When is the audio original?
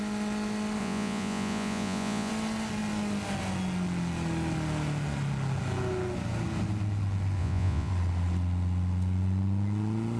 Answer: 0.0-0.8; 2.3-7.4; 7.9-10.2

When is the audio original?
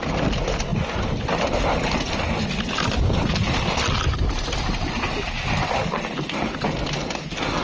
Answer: 0.0-7.6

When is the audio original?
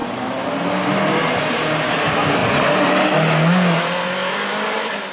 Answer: 0.0-5.1